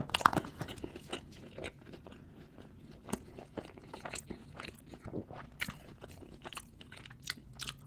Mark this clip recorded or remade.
remade